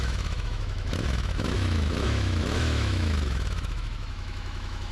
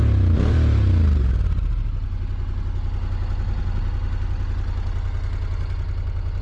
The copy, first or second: first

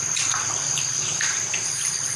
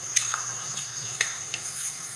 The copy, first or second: second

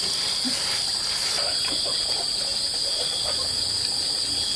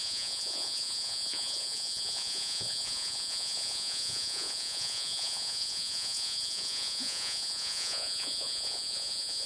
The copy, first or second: second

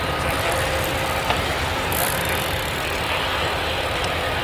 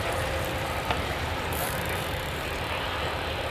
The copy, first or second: second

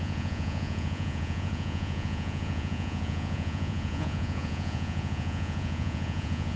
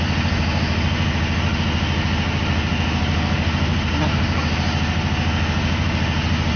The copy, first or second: first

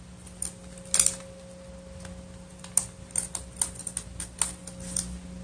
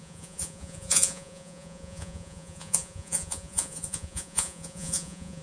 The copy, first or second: second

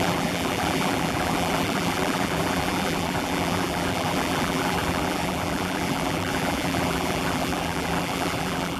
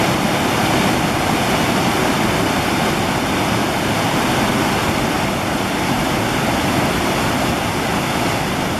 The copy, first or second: first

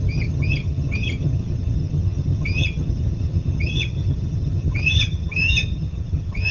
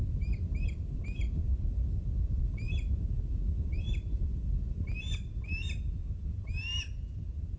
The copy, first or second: first